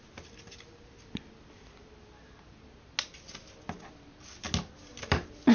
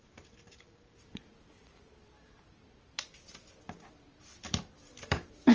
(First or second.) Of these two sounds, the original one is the first